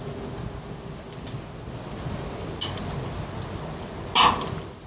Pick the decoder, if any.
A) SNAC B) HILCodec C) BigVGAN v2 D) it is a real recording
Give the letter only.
D